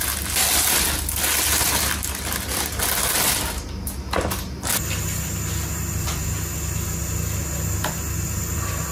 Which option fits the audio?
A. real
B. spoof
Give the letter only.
A